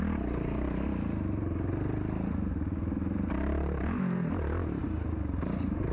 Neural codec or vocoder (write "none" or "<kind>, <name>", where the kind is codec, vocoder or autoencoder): vocoder, BigVGAN v2